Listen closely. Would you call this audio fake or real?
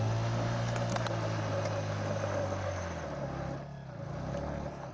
real